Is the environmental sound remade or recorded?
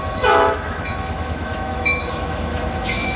remade